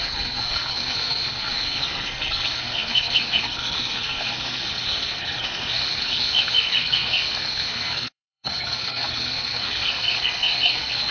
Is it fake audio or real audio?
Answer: fake